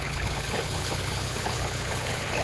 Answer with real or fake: fake